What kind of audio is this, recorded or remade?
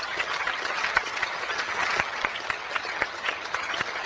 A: remade